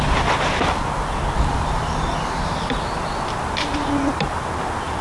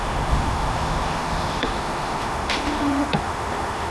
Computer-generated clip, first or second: second